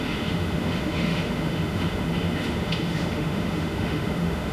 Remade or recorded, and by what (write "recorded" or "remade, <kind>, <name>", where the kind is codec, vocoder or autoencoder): remade, autoencoder, DAC-VAE